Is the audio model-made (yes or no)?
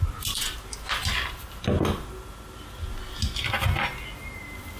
no